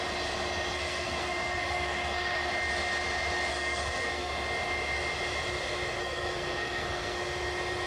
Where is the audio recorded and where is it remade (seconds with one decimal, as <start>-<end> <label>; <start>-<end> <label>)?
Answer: 0.0-0.7 recorded; 0.7-2.5 remade; 2.5-3.5 recorded; 3.5-4.3 remade; 4.3-6.0 recorded; 6.0-7.2 remade; 7.2-7.9 recorded

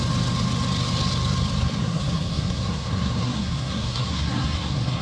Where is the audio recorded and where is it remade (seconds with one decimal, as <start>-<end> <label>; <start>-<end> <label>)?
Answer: 0.0-1.8 recorded; 1.8-5.0 remade

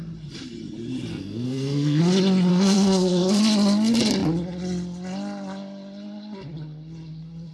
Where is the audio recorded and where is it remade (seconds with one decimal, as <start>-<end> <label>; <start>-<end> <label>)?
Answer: 0.0-1.1 recorded; 1.1-2.0 remade; 2.0-2.5 recorded; 2.5-3.4 remade; 3.4-7.5 recorded

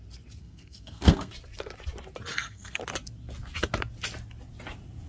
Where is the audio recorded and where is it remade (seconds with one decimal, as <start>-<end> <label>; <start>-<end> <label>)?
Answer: 0.0-0.4 recorded; 0.4-1.3 remade; 1.3-2.3 recorded; 2.3-2.8 remade; 2.8-5.1 recorded

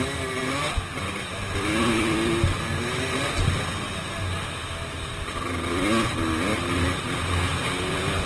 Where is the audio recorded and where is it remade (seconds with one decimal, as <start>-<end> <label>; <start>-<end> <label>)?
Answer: 0.0-6.5 recorded; 6.5-7.0 remade; 7.0-8.3 recorded

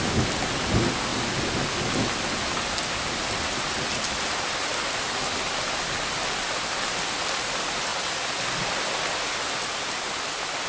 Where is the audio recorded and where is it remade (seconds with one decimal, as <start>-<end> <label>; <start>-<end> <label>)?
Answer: 0.0-10.7 recorded

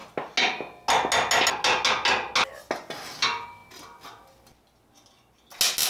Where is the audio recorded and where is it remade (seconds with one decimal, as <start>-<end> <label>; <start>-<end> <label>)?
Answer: 0.0-5.9 recorded

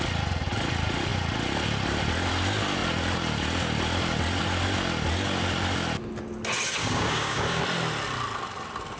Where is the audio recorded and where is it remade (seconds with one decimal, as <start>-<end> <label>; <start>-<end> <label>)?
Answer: 0.0-6.8 recorded; 6.8-7.6 remade; 7.6-9.0 recorded